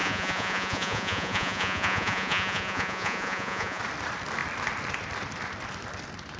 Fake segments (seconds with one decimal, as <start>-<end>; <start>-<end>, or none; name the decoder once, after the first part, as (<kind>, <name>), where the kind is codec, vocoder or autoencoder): 0.0-3.8 (vocoder, Vocos)